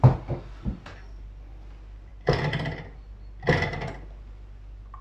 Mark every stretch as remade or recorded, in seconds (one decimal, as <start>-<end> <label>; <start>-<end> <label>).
0.0-5.0 recorded